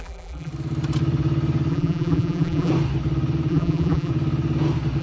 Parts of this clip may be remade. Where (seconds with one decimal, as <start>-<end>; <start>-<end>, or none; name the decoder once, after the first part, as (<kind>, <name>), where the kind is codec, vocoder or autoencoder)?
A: 0.0-0.5 (vocoder, BigVGAN v2); 1.7-2.7; 3.5-4.1